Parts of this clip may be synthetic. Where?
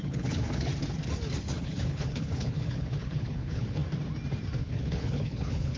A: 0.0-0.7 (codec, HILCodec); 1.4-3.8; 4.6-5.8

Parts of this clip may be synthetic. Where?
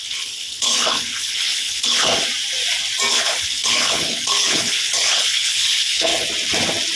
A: 0.0-2.1 (codec, HILCodec); 3.1-6.1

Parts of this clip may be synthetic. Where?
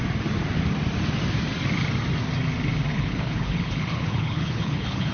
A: 2.9-5.1 (codec, HILCodec)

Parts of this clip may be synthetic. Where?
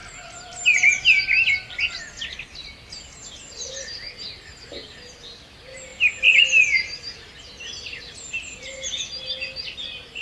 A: none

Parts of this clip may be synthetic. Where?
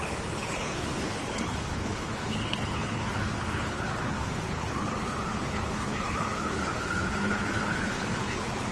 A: 0.0-8.7 (codec, HILCodec)